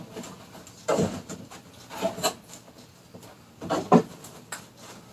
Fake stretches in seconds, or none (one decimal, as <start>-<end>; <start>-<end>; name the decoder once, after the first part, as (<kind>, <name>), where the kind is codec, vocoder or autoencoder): none

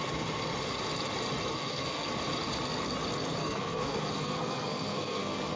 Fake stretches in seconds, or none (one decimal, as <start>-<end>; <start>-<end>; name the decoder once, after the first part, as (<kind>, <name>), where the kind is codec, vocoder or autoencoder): 1.5-2.1 (codec, SNAC); 3.4-5.6

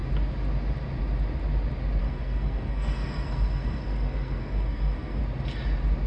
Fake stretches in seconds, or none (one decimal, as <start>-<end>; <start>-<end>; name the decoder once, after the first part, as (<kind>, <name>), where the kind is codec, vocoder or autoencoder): 2.0-5.2 (codec, SNAC)

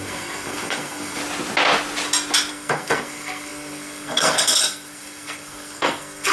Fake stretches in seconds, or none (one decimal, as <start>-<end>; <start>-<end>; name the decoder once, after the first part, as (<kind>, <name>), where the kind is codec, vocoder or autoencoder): 0.0-1.2 (codec, SNAC); 2.5-6.3